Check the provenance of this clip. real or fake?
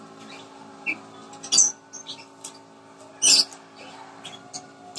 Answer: real